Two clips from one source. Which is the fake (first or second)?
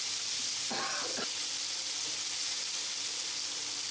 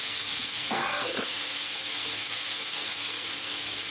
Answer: second